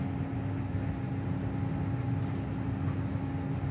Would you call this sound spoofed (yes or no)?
no